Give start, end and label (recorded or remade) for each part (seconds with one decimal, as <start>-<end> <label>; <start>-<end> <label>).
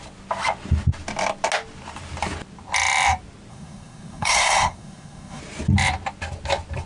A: 0.0-3.5 recorded; 3.5-5.4 remade; 5.4-6.9 recorded